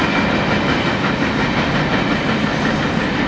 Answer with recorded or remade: recorded